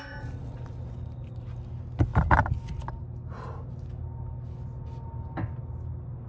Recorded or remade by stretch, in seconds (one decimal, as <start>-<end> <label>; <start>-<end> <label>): 0.0-6.3 recorded